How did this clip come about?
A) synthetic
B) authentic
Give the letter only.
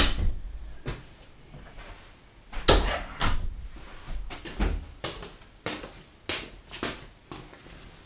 B